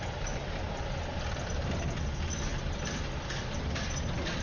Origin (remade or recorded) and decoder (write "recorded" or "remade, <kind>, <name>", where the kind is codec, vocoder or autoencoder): recorded